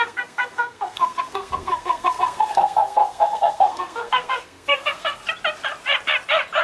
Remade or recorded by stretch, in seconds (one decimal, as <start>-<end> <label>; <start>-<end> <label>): 0.0-5.2 remade; 5.2-6.6 recorded